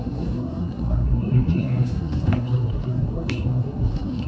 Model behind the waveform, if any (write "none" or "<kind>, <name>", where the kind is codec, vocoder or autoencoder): codec, SNAC